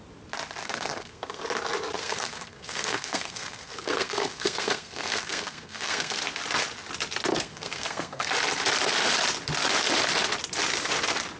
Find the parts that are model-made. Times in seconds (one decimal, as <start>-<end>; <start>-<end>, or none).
0.6-1.4; 2.0-6.2; 7.3-8.3